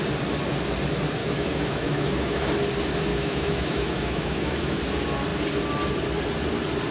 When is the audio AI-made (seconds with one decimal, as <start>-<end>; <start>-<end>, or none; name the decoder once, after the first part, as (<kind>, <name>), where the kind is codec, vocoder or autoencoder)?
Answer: 1.2-2.5 (autoencoder, DAC-VAE); 3.1-4.8